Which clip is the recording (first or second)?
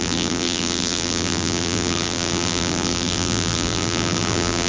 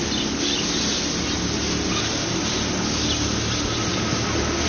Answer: second